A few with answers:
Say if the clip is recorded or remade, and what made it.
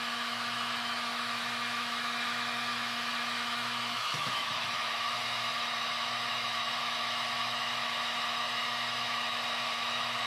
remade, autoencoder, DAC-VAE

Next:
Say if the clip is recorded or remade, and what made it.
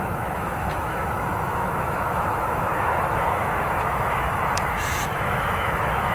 remade, autoencoder, DAC-VAE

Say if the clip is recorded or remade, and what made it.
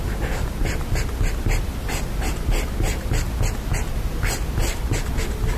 recorded